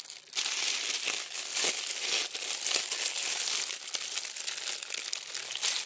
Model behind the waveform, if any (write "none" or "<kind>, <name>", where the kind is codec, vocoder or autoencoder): none